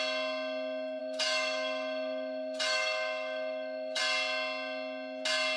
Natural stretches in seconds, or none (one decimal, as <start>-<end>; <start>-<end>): 0.0-1.0; 4.0-5.6